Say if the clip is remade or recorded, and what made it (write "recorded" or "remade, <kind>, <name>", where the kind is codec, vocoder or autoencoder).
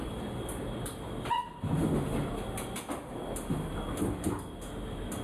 recorded